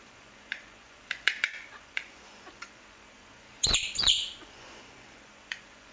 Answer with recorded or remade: remade